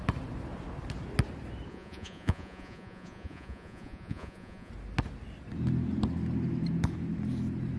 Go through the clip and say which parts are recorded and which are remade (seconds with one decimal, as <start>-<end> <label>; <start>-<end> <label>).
0.0-1.7 recorded; 1.7-4.7 remade; 4.7-7.8 recorded